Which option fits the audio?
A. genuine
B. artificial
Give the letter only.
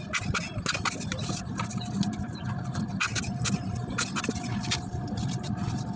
A